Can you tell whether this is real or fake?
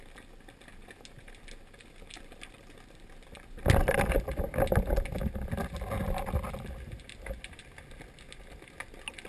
real